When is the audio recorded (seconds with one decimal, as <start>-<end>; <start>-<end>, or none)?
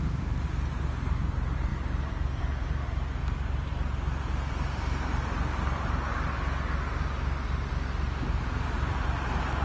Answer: 0.0-9.6